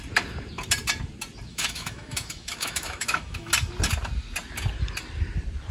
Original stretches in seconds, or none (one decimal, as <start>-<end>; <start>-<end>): 0.0-1.5; 3.5-5.7